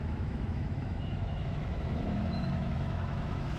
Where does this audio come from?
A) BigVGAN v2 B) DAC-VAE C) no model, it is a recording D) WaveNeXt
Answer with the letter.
B